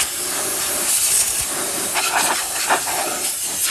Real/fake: real